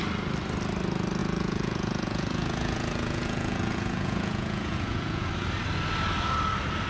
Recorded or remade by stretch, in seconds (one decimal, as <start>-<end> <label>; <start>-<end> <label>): 0.0-1.2 recorded; 1.2-5.3 remade; 5.3-6.9 recorded